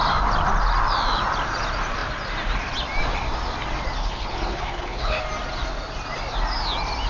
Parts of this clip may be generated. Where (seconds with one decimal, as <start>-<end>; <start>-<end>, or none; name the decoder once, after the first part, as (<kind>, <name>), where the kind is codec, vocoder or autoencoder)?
4.0-5.2 (codec, HILCodec)